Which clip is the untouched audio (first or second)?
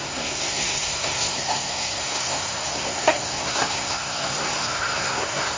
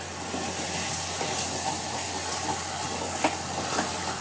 second